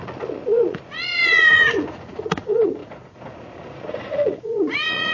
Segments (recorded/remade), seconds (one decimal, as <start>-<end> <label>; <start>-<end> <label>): 0.0-5.1 remade